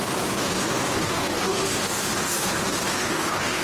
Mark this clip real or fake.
fake